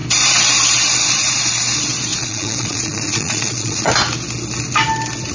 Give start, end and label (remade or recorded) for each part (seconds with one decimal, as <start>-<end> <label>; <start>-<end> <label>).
0.0-2.1 recorded; 2.1-3.9 remade; 3.9-5.3 recorded